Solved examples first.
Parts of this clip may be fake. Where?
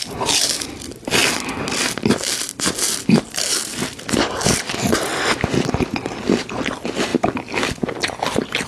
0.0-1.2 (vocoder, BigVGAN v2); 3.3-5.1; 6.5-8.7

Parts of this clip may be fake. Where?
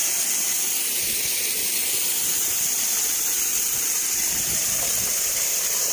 0.0-0.5 (vocoder, BigVGAN v2); 0.9-1.4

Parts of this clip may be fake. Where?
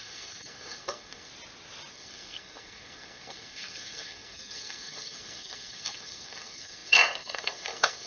0.0-1.3 (codec, SNAC); 1.9-8.1